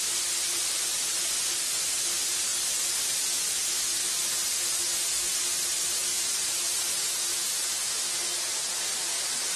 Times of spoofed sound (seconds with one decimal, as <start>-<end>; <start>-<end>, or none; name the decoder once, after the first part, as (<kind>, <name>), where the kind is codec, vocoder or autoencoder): none